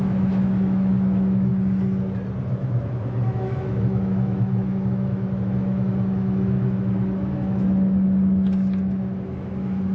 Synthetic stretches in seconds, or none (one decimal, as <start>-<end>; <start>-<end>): 0.0-1.5; 2.5-9.9